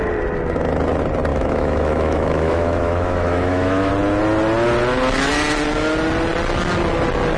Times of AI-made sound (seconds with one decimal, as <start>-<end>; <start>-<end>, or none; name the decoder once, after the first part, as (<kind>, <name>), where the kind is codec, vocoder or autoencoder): 1.3-3.9 (autoencoder, DAC-VAE)